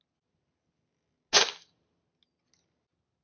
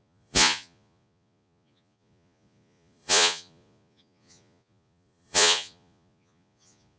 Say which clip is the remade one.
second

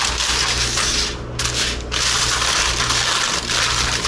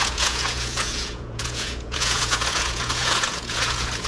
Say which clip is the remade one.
second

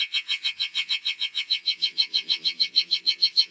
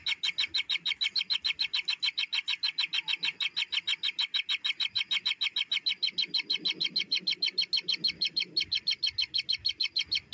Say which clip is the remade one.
first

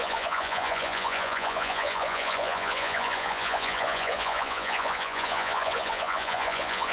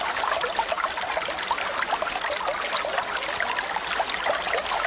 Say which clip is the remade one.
first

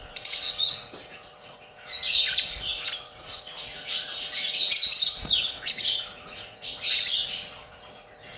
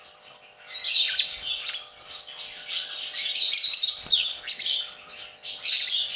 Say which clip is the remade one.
first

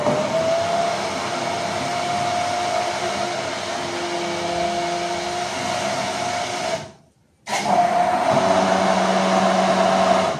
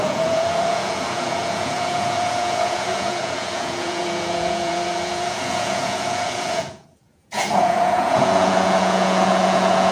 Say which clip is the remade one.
second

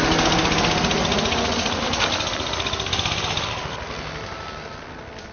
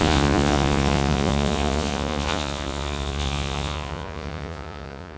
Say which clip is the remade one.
second